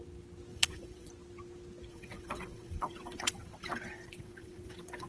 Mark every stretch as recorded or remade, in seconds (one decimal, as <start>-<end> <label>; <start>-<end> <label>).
0.0-0.5 recorded; 0.5-1.1 remade; 1.1-1.9 recorded; 1.9-5.1 remade